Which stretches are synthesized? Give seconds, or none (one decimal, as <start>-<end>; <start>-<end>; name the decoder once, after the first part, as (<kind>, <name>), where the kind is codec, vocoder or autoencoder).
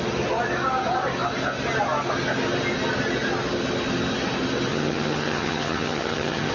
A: 4.7-6.5 (vocoder, HiFi-GAN)